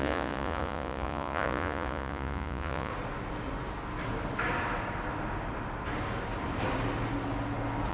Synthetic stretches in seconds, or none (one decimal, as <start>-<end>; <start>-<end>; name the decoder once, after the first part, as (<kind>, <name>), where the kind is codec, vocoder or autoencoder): 0.0-2.9 (vocoder, Vocos)